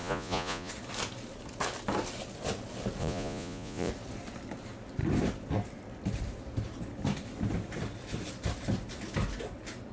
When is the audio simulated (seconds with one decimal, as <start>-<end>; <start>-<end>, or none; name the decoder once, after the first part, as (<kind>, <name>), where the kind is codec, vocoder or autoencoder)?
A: 0.0-0.7 (vocoder, Vocos); 3.0-3.9